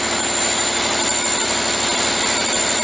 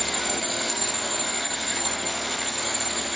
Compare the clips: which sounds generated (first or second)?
second